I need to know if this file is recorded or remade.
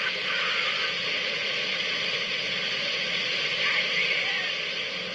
recorded